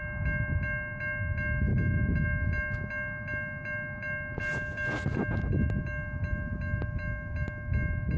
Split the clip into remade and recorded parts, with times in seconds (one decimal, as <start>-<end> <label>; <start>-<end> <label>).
0.0-8.2 recorded